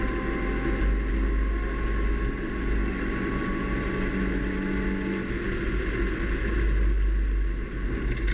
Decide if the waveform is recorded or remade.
recorded